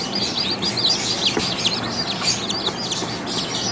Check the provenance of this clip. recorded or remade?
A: recorded